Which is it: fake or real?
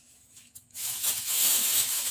fake